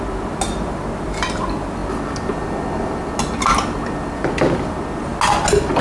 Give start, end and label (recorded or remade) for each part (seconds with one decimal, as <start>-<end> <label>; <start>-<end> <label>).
0.0-5.8 recorded